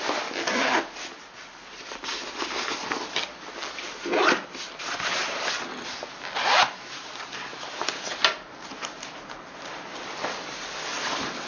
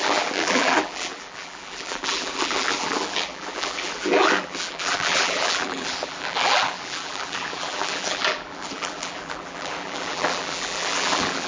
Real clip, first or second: first